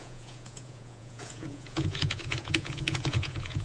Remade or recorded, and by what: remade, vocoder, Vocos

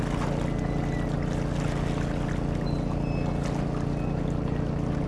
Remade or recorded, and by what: recorded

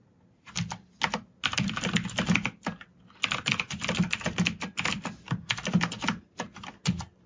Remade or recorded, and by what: recorded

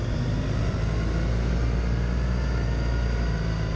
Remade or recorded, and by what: recorded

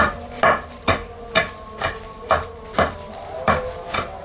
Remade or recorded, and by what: recorded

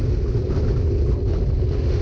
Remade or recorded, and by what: recorded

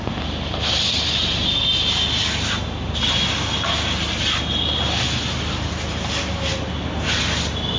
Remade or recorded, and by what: recorded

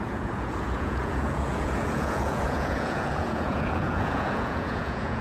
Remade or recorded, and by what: remade, vocoder, Vocos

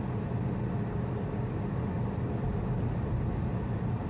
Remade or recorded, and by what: recorded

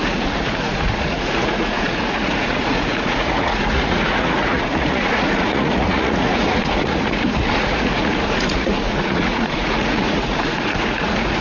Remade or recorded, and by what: remade, vocoder, Vocos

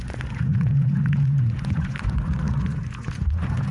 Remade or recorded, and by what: remade, vocoder, Vocos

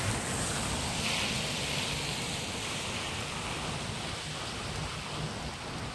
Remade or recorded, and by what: recorded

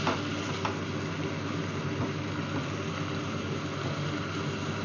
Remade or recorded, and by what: recorded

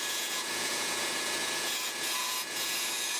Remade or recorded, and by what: remade, vocoder, Vocos